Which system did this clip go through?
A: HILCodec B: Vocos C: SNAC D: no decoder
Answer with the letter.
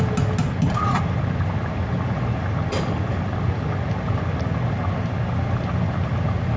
D